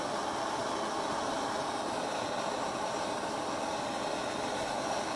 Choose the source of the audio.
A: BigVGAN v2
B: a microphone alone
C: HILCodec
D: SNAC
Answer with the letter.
A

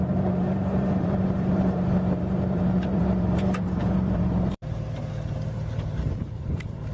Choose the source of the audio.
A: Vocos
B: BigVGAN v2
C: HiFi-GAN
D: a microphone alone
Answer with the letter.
B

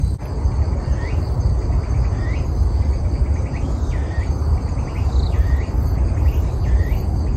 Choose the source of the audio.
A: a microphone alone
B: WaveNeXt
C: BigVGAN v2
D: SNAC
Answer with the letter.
A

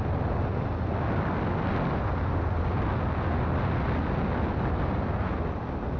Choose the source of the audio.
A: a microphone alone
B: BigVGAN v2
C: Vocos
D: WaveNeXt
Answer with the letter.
A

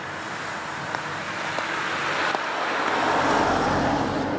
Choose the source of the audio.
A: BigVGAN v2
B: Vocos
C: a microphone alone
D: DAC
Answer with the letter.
C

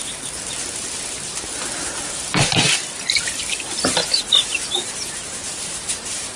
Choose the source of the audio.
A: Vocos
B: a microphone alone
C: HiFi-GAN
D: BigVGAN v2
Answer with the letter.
B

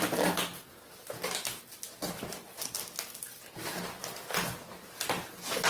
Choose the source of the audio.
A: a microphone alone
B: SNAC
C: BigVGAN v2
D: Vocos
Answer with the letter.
A